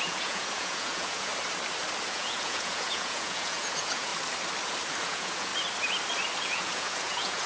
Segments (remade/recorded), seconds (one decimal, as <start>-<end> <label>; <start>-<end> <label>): 0.0-1.3 remade; 1.3-2.1 recorded; 2.1-4.1 remade; 4.1-5.0 recorded; 5.0-5.5 remade; 5.5-6.4 recorded; 6.4-7.5 remade